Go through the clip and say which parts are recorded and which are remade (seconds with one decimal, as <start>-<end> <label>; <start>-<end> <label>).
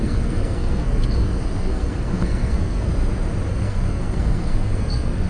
0.0-2.9 remade; 2.9-3.5 recorded; 3.5-5.3 remade